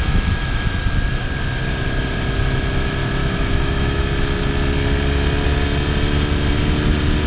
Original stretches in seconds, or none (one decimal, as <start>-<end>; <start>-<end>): 0.0-3.2; 4.0-7.3